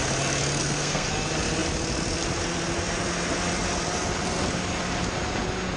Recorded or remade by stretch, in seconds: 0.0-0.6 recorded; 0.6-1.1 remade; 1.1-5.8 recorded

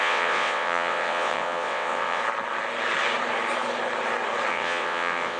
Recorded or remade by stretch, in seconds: 0.0-2.2 remade; 2.2-4.5 recorded; 4.5-5.4 remade